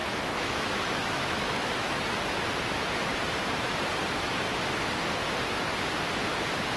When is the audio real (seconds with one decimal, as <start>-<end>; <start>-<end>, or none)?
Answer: 2.0-6.8